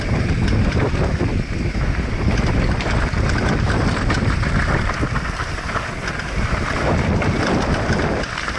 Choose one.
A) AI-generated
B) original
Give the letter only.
B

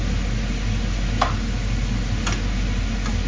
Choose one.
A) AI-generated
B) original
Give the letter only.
B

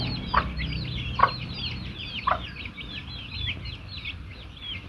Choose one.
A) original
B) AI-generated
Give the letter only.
A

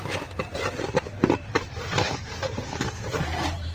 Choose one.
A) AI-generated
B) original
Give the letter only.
A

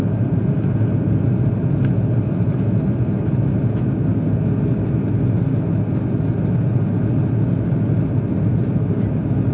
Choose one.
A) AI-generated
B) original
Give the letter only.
B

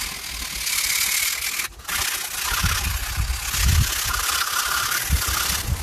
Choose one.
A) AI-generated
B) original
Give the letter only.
B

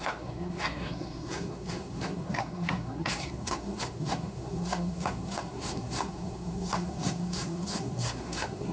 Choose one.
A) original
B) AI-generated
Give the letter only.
B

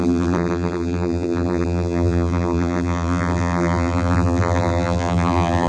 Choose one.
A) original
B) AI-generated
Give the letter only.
B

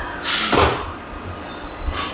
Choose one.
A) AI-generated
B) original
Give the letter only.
A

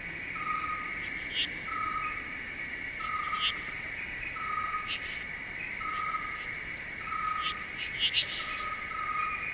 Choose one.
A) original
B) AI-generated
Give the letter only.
A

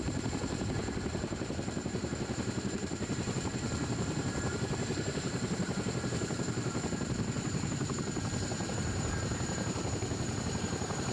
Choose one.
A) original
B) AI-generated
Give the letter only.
B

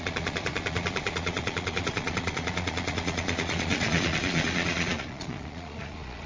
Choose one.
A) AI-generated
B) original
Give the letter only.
A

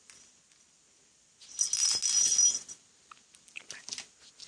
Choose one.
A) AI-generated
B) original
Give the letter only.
B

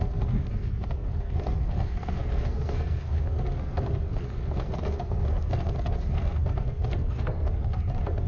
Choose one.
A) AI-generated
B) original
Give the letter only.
A